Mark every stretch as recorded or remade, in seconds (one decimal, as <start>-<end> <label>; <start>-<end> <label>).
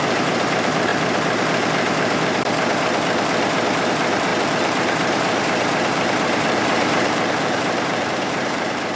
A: 0.0-0.9 remade; 0.9-3.9 recorded; 3.9-9.0 remade